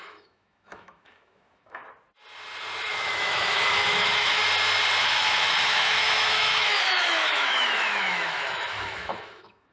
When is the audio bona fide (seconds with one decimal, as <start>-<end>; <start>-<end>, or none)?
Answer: 1.8-2.8; 4.4-5.0